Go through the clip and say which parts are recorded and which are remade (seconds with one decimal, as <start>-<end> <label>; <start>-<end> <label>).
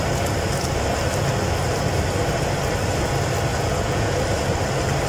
0.0-3.5 recorded; 3.5-4.2 remade; 4.2-5.1 recorded